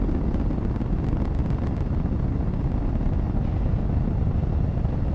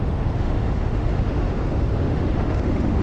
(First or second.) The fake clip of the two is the second